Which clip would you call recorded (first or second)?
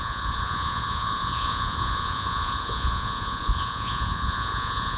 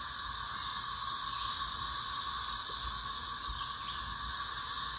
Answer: second